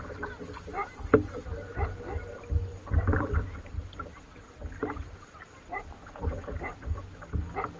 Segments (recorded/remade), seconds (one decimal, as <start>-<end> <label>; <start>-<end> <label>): 0.0-7.8 recorded